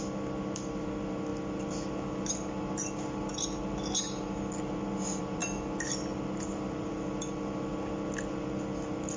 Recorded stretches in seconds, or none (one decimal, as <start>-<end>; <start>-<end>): 0.0-9.2